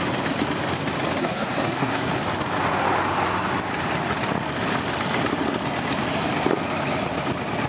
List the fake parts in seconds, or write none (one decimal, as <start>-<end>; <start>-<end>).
1.2-2.1